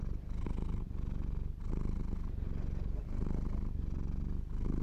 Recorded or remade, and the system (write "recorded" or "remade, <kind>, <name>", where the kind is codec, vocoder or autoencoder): recorded